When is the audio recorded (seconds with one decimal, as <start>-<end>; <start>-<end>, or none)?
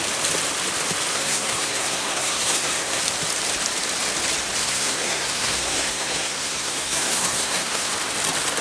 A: 0.0-1.1; 3.0-4.6; 7.9-8.6